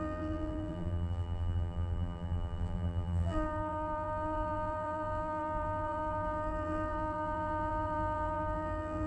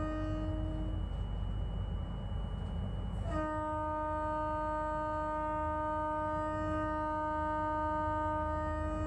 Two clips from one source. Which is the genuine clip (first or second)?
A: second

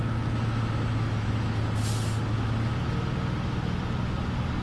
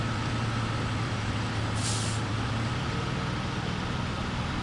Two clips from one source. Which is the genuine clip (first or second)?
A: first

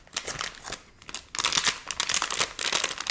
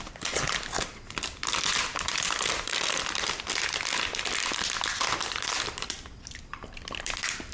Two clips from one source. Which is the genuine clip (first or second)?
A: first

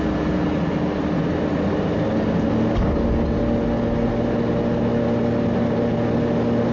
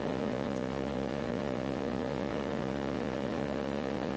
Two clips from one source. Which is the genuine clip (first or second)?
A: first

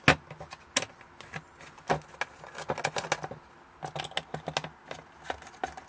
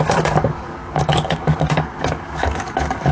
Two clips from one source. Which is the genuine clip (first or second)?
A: first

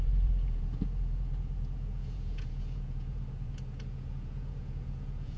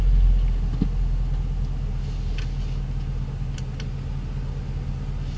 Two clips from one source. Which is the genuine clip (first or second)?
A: second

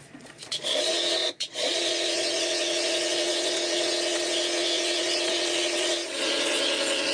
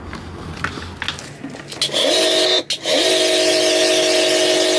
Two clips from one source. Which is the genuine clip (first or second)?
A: second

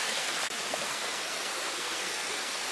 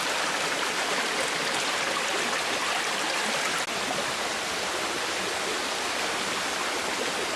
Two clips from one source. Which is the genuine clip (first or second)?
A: second